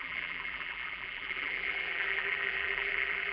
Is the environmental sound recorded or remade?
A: remade